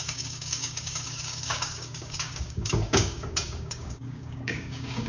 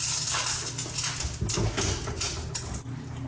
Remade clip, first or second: first